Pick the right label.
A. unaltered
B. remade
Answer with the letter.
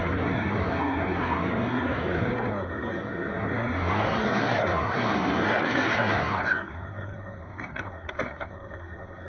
B